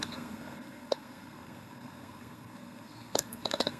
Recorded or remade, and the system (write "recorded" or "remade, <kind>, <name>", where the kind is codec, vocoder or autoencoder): remade, codec, SNAC